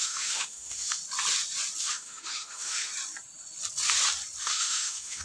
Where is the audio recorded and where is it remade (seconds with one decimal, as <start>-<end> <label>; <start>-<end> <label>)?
0.0-1.0 remade; 1.0-1.8 recorded; 1.8-2.9 remade; 2.9-4.4 recorded; 4.4-5.2 remade